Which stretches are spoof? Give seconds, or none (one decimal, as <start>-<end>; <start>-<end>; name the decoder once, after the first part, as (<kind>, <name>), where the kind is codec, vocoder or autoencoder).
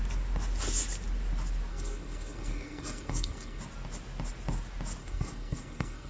1.7-3.6 (codec, SNAC); 5.0-6.1